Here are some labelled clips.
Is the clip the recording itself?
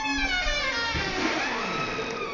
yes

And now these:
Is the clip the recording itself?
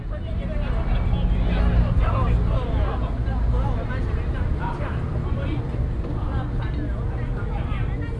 yes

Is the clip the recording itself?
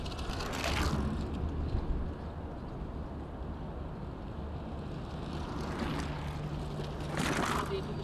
yes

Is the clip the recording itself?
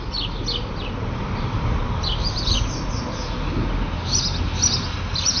yes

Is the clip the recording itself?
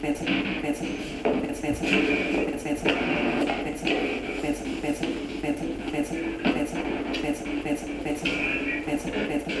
yes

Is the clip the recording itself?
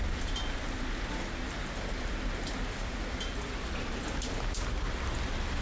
yes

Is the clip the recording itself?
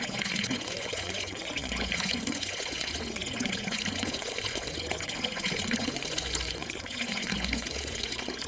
no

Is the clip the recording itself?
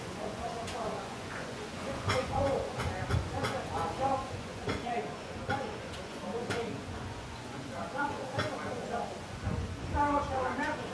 no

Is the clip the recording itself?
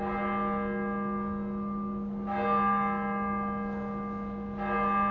yes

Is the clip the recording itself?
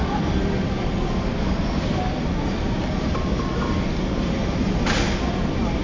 yes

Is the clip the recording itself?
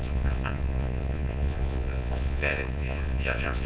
no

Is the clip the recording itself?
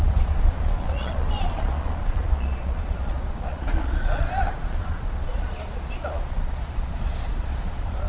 no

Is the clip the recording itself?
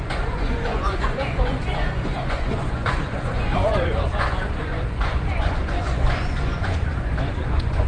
no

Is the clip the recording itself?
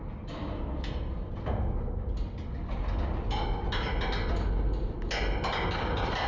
yes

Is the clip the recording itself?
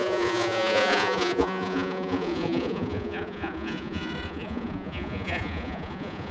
no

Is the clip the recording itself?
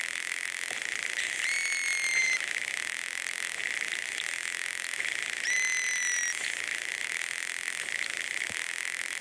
yes